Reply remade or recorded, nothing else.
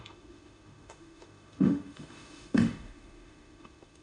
remade